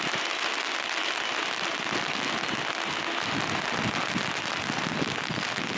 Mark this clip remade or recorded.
recorded